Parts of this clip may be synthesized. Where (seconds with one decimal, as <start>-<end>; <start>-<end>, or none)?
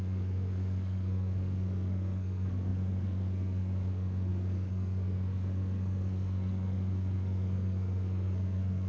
0.0-8.9